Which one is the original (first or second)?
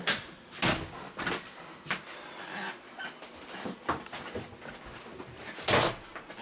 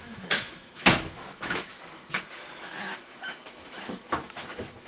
first